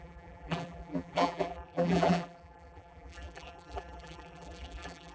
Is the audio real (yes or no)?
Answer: no